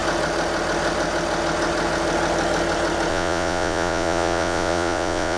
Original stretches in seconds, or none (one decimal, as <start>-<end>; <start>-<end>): 0.0-3.1